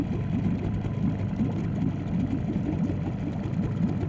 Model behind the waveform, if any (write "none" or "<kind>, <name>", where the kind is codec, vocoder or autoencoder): none